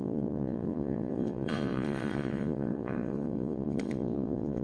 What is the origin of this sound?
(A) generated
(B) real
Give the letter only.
A